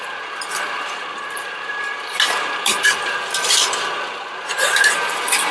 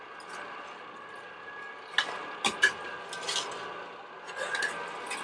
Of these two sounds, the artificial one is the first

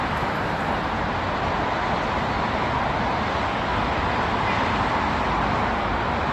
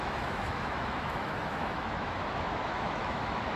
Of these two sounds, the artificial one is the second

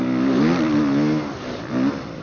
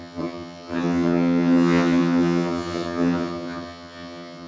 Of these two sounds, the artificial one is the second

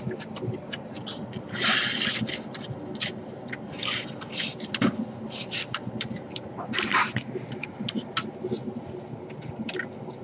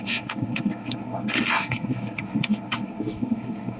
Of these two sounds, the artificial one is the second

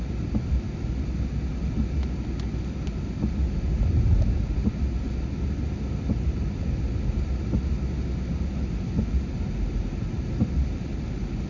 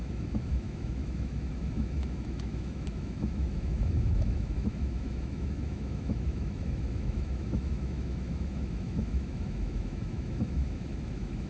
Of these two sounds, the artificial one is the second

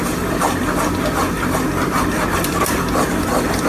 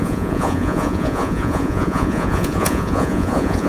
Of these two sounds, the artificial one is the second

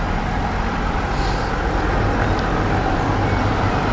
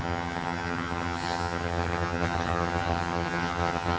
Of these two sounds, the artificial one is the second